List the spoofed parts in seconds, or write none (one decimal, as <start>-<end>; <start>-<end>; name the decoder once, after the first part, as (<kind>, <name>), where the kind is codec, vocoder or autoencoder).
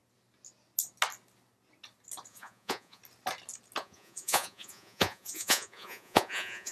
2.3-3.0 (vocoder, Vocos); 3.8-6.7